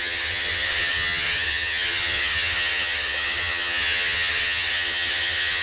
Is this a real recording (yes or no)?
no